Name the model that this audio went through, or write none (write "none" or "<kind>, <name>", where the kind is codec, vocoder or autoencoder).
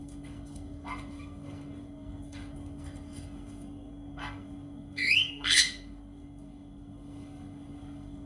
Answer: codec, SNAC